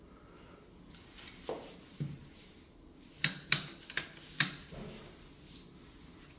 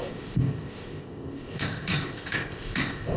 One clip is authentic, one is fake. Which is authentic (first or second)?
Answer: first